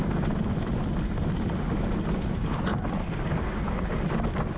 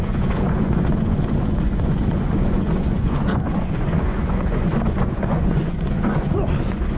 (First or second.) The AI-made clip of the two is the second